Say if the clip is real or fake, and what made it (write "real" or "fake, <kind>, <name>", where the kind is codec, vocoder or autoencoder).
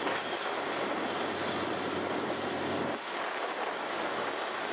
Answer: real